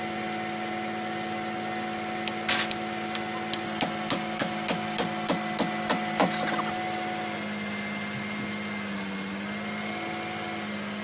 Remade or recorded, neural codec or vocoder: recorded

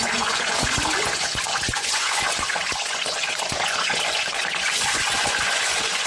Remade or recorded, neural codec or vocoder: remade, vocoder, Vocos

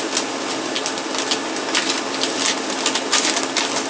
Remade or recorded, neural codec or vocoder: recorded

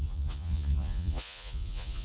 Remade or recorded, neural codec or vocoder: remade, vocoder, Vocos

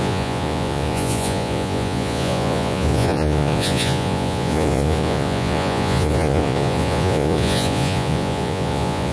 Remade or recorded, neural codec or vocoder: remade, vocoder, Vocos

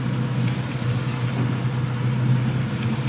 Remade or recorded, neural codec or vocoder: recorded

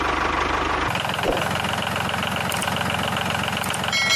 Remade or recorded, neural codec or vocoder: recorded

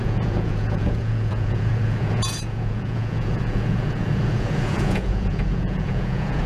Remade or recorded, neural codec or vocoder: remade, vocoder, Vocos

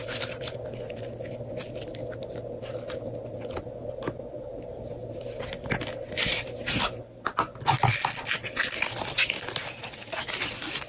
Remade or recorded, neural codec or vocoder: recorded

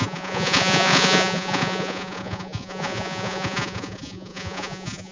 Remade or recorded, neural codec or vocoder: remade, vocoder, Vocos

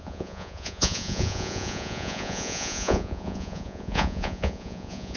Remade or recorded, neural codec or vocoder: remade, vocoder, Vocos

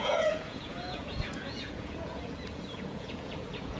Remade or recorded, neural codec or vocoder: remade, vocoder, Vocos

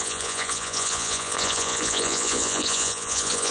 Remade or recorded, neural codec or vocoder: remade, vocoder, Vocos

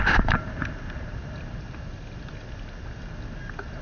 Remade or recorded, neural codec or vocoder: recorded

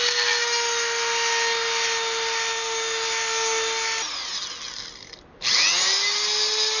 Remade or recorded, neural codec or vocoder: recorded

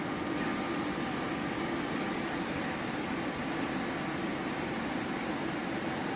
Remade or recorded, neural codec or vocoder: recorded